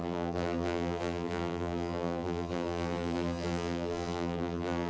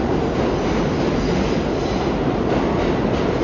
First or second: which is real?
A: second